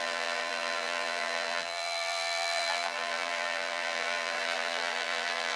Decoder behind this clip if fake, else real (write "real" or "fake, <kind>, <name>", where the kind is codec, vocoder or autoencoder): fake, vocoder, BigVGAN v2